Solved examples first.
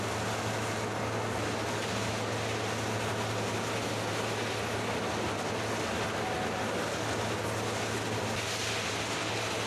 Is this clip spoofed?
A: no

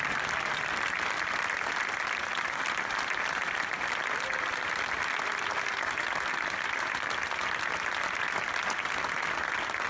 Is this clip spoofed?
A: no